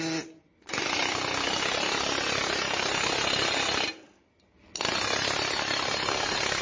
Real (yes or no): yes